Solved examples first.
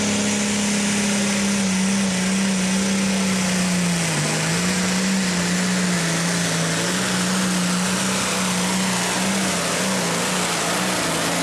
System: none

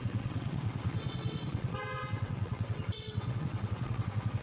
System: vocoder, WaveNeXt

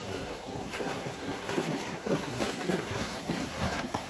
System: codec, SNAC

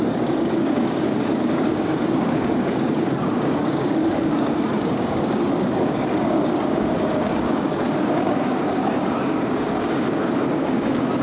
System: codec, DAC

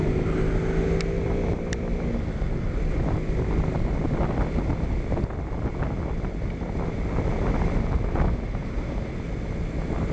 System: none